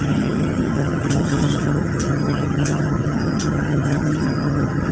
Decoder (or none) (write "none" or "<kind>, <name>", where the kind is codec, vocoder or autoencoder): vocoder, HiFi-GAN